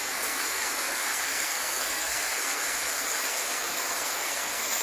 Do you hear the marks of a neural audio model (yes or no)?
yes